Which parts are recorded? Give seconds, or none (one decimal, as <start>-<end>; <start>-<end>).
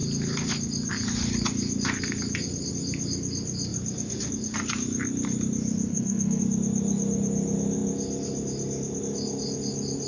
0.0-5.9; 6.4-10.1